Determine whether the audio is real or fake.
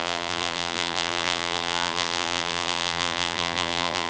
fake